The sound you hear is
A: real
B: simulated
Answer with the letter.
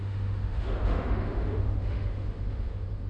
B